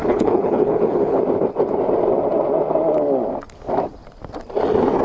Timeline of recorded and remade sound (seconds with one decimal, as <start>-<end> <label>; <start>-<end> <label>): 0.0-1.2 remade; 1.2-5.0 recorded